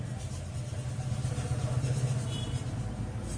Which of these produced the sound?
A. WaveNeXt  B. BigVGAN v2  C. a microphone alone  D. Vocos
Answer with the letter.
C